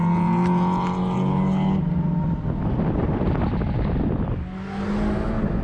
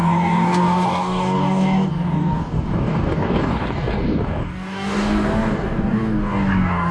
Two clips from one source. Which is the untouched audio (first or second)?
first